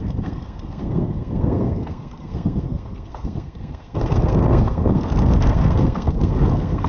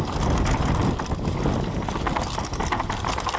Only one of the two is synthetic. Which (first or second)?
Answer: first